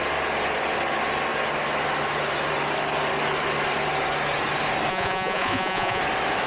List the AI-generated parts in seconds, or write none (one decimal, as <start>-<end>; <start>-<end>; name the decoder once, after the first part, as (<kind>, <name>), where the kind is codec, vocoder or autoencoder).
4.9-6.0 (vocoder, Vocos)